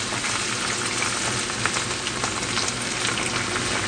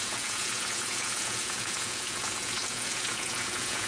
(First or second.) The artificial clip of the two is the second